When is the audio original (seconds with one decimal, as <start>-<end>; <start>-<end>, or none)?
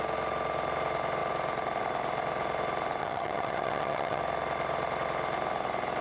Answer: 0.0-3.0; 4.2-6.0